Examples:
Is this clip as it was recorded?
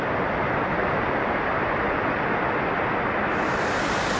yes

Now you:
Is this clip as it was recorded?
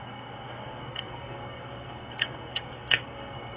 no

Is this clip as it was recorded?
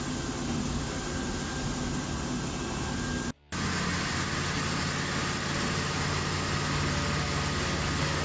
yes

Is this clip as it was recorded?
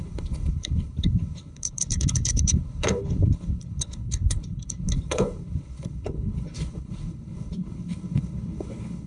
no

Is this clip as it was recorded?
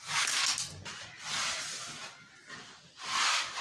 yes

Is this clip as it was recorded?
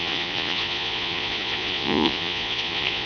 no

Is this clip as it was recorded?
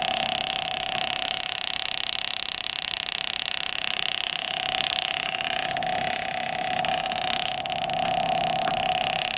yes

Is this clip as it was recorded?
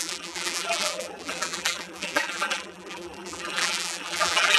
no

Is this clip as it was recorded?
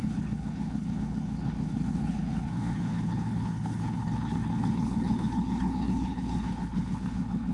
no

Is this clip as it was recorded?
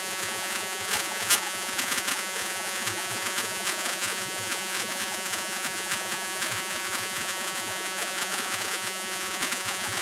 no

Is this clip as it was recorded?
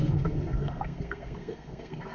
no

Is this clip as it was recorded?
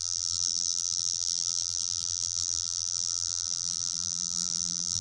no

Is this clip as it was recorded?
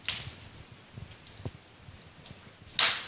yes